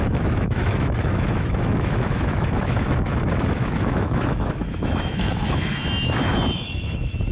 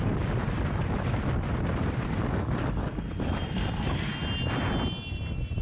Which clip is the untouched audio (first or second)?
second